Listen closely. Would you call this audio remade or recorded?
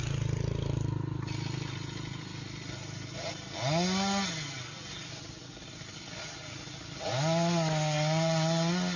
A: recorded